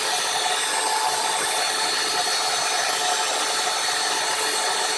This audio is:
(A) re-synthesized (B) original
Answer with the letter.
B